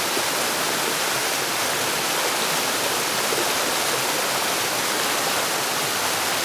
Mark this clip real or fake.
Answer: real